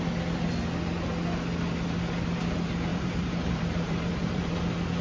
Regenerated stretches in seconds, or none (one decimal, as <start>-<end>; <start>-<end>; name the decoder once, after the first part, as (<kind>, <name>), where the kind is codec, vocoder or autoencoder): 2.9-4.5 (vocoder, BigVGAN v2)